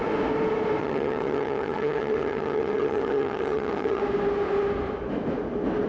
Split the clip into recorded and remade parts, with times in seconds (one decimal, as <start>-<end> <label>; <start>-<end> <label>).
0.0-0.8 recorded; 0.8-4.0 remade; 4.0-5.9 recorded